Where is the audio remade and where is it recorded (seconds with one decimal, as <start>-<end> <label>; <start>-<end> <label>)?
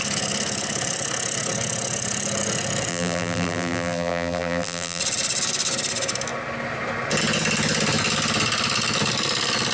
0.0-2.9 recorded; 2.9-5.0 remade; 5.0-9.7 recorded